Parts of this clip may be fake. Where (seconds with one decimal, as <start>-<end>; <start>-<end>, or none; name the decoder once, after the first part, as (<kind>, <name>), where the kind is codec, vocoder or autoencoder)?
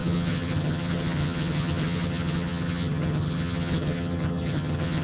0.0-5.0 (vocoder, HiFi-GAN)